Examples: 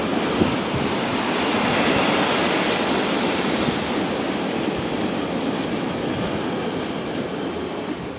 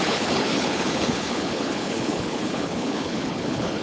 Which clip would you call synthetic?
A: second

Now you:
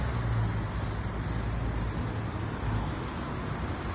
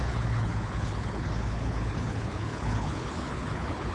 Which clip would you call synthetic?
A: second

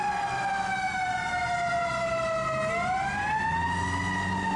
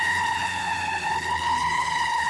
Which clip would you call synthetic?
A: second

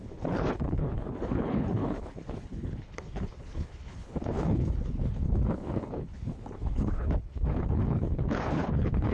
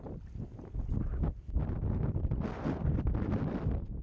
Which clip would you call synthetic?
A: first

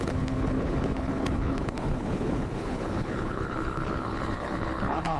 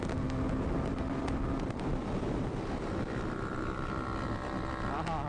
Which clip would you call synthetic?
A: first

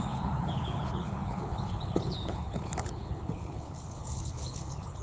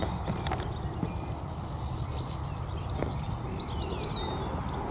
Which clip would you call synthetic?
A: first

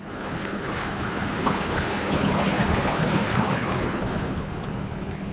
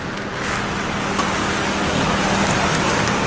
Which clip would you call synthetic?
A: first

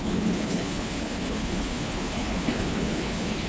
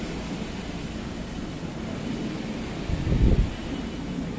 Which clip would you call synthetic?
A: first